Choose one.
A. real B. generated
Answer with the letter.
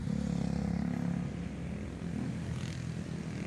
A